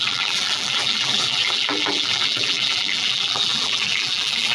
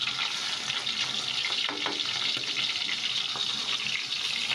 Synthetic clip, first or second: first